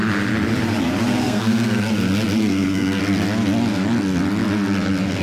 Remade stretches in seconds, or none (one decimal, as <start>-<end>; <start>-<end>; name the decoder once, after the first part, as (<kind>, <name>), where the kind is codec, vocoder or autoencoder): 1.2-1.9 (codec, SNAC); 2.4-3.0